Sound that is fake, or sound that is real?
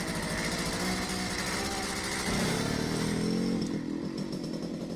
real